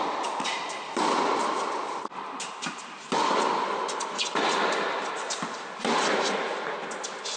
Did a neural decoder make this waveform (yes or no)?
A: no